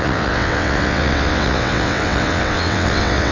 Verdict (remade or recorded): remade